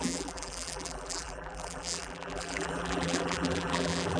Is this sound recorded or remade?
remade